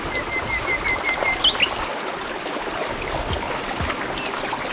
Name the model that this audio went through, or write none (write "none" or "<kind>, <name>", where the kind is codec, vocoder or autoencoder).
none